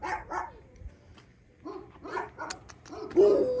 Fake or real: real